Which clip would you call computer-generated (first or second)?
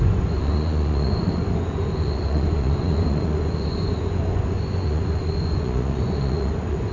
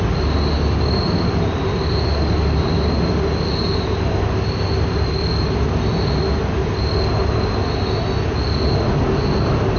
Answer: first